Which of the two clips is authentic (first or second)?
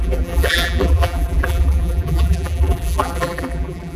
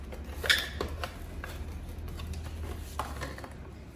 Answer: second